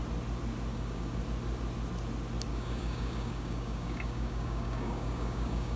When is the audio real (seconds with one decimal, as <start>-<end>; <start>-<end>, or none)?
0.0-0.7; 1.2-2.5